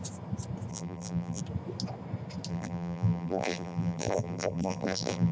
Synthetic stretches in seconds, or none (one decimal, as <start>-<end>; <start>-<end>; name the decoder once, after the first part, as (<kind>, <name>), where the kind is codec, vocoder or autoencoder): 0.7-1.4 (vocoder, BigVGAN v2); 2.5-5.3